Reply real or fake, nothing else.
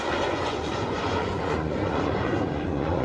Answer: fake